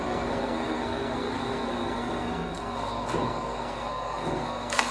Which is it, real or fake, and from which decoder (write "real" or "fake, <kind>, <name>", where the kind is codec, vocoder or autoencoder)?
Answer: fake, codec, SNAC